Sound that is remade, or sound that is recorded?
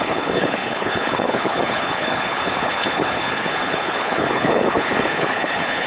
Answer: remade